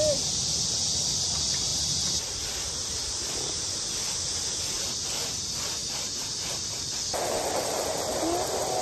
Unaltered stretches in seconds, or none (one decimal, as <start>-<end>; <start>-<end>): 0.0-1.7; 3.6-5.8; 6.5-8.8